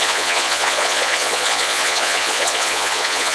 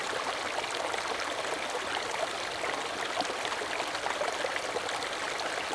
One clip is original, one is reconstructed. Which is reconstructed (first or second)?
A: first